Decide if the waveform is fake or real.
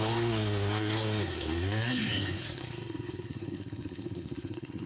fake